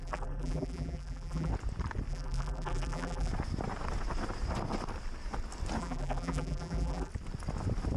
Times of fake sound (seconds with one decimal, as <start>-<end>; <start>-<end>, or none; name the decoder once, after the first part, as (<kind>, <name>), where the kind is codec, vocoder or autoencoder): 0.0-1.5 (vocoder, BigVGAN v2); 2.1-3.3; 5.8-7.1